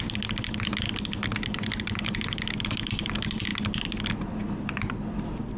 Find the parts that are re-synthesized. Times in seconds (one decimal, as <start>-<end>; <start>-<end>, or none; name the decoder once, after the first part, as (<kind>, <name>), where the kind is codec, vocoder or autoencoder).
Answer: none